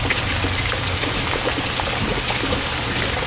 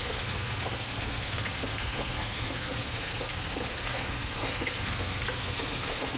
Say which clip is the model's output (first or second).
second